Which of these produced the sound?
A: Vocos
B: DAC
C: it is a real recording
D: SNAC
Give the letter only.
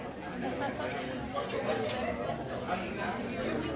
C